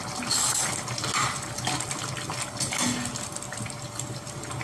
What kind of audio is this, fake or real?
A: real